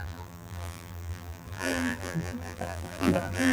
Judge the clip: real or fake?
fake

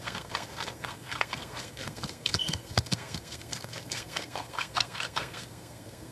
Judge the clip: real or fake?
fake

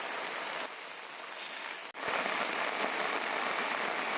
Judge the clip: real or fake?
real